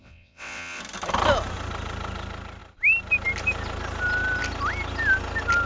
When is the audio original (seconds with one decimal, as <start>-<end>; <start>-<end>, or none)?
0.8-5.7